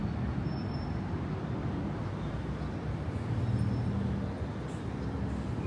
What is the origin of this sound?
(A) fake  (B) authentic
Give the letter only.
B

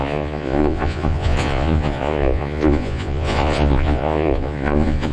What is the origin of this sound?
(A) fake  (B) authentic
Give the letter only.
A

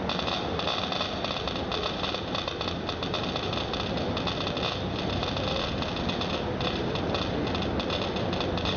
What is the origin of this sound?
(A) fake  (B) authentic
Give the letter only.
B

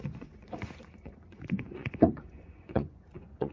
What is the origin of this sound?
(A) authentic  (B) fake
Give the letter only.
B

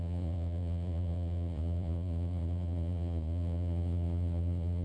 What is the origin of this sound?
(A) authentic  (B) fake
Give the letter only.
B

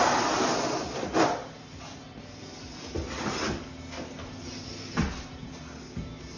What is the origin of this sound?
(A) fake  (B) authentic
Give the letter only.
B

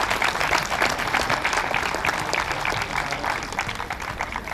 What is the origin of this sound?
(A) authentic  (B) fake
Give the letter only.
A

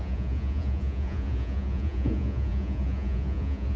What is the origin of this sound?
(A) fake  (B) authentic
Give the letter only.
A